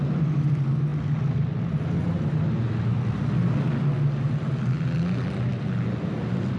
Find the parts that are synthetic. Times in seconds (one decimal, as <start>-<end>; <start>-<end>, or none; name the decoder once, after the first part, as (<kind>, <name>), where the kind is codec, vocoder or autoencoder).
none